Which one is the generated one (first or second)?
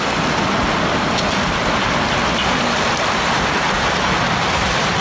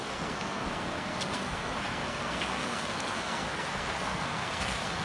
second